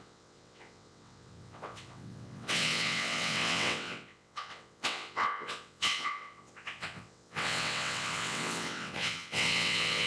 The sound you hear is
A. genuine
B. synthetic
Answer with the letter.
B